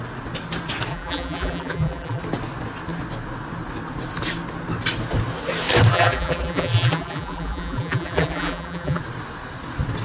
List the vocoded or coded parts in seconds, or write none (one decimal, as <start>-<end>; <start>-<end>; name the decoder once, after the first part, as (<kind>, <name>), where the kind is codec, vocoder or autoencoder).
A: 0.9-2.2 (vocoder, BigVGAN v2); 5.9-9.0